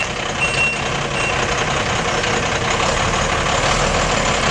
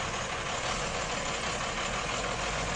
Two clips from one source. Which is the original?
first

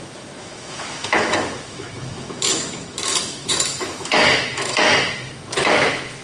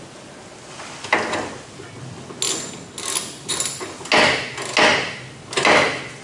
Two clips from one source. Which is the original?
second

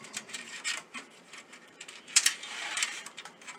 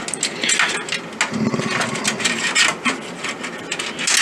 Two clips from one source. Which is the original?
second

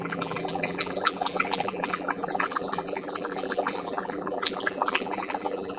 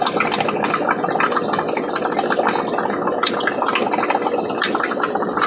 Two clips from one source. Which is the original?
second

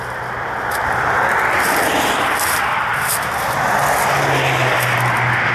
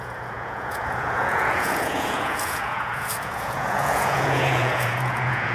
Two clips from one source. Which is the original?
first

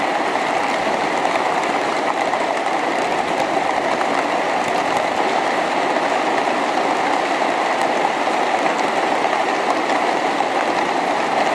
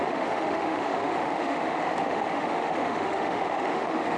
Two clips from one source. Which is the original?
first